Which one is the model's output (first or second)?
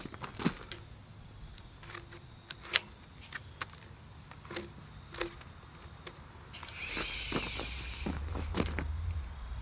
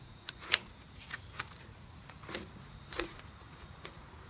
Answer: second